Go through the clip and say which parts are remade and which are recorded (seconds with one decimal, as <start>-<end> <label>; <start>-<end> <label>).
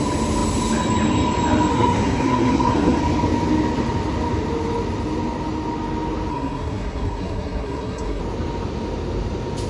0.0-1.7 recorded; 1.7-3.0 remade; 3.0-6.3 recorded; 6.3-8.2 remade; 8.2-9.7 recorded